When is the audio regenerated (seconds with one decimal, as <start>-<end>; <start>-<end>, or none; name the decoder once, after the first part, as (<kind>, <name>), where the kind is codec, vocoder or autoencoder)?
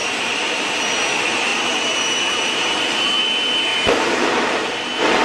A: 0.0-0.8 (vocoder, BigVGAN v2); 1.5-3.0; 3.7-4.4